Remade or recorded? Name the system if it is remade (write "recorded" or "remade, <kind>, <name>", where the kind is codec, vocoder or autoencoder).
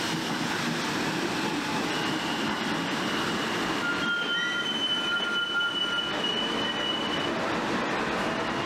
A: recorded